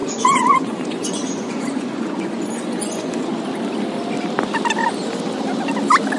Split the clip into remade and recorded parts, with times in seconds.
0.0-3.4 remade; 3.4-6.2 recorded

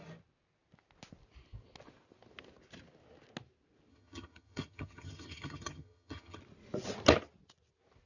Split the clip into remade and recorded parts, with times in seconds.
0.0-3.9 recorded; 3.9-6.4 remade; 6.4-8.1 recorded

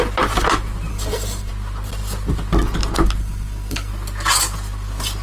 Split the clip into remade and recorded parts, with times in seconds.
0.0-0.9 recorded; 0.9-1.5 remade; 1.5-3.2 recorded; 3.2-3.9 remade; 3.9-5.2 recorded

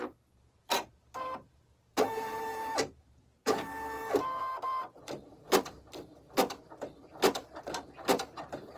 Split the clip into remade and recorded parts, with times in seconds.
0.0-3.4 remade; 3.4-4.4 recorded; 4.4-8.8 remade

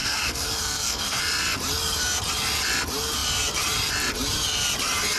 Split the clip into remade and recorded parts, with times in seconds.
0.0-1.2 remade; 1.2-5.2 recorded

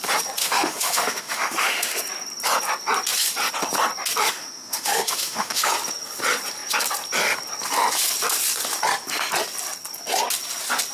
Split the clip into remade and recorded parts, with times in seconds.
0.0-0.4 recorded; 0.4-2.0 remade; 2.0-4.2 recorded; 4.2-5.7 remade; 5.7-10.9 recorded

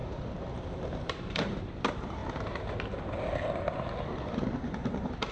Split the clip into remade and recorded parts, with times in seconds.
0.0-1.1 recorded; 1.1-2.2 remade; 2.2-4.4 recorded; 4.4-5.3 remade

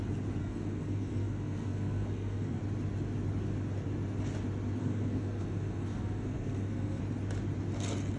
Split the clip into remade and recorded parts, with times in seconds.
0.0-0.4 recorded; 0.4-2.6 remade; 2.6-4.8 recorded; 4.8-7.0 remade; 7.0-8.2 recorded